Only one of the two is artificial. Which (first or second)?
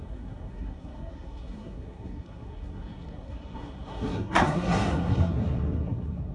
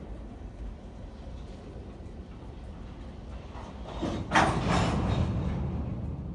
first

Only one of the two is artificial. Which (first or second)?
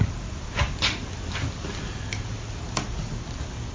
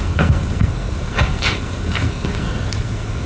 second